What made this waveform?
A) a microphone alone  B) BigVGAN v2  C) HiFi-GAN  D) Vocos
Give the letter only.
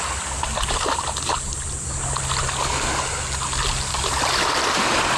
A